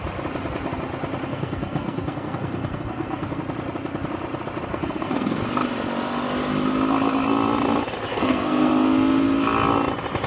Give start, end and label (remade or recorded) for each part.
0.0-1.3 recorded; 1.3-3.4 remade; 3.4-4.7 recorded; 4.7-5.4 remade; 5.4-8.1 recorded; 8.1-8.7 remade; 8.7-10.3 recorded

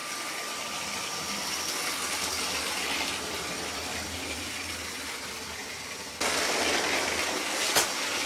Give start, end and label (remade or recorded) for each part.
0.0-8.3 recorded

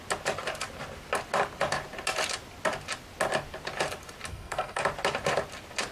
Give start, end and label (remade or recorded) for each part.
0.0-4.3 recorded; 4.3-4.8 remade; 4.8-5.9 recorded

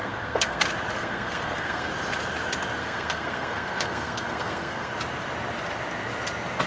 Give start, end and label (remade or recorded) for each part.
0.0-0.6 remade; 0.6-1.0 recorded; 1.0-1.9 remade; 1.9-2.8 recorded; 2.8-4.9 remade; 4.9-6.7 recorded

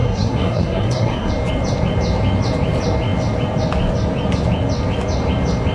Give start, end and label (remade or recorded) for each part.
0.0-1.3 remade; 1.3-5.7 recorded

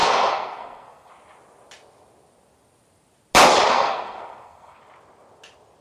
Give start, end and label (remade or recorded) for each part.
0.0-1.1 remade; 1.1-3.7 recorded; 3.7-4.8 remade; 4.8-5.8 recorded

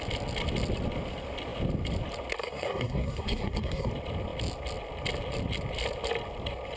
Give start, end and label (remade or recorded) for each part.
0.0-2.4 recorded; 2.4-3.9 remade; 3.9-6.8 recorded